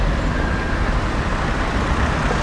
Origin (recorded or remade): recorded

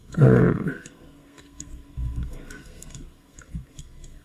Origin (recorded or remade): remade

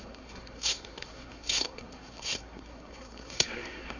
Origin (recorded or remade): remade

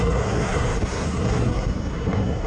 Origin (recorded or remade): remade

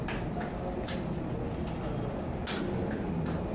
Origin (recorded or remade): recorded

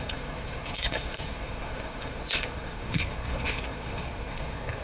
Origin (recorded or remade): remade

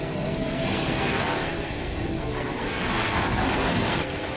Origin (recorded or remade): remade